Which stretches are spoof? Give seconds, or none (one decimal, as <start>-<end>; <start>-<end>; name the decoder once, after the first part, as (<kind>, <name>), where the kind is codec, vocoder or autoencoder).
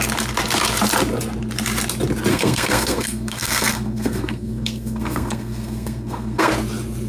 2.3-6.5 (codec, SNAC)